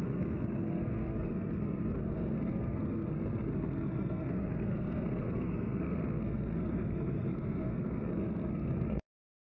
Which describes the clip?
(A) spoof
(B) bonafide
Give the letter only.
A